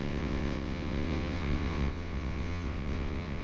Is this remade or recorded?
remade